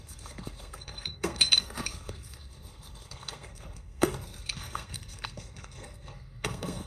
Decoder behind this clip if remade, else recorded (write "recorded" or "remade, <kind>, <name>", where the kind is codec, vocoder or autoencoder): remade, codec, SNAC